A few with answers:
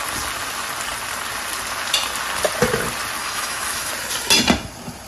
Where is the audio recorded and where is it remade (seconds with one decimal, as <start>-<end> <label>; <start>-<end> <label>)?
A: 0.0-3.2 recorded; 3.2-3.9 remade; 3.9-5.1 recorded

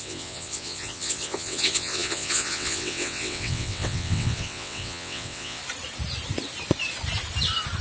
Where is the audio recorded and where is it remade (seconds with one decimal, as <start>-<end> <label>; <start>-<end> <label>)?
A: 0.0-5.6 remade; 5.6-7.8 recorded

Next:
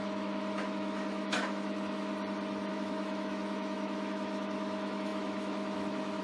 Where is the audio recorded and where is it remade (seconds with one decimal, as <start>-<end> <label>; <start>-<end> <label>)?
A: 0.0-2.1 remade; 2.1-2.7 recorded; 2.7-6.2 remade